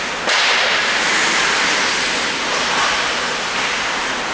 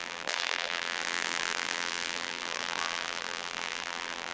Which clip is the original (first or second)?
first